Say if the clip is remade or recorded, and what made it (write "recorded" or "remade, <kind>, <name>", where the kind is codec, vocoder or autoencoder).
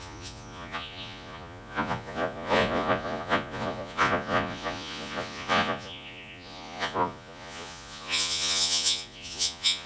remade, vocoder, Vocos